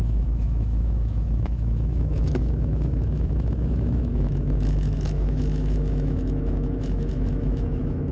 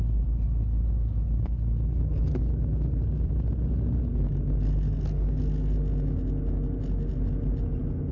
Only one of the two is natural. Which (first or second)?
second